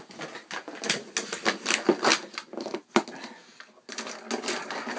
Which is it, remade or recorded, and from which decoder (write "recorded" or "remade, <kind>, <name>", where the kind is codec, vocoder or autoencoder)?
recorded